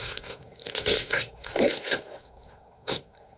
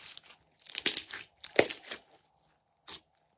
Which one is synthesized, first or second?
first